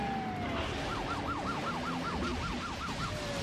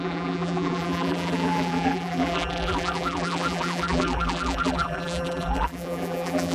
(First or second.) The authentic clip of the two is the first